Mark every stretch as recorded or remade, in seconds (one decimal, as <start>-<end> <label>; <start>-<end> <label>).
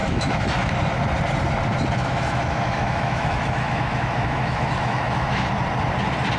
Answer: 0.0-0.7 remade; 0.7-2.0 recorded; 2.0-5.5 remade; 5.5-6.4 recorded